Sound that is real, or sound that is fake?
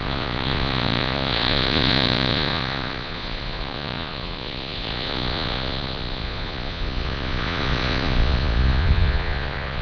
fake